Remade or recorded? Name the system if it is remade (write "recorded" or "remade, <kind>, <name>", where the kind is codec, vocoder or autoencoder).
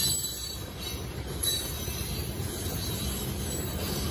recorded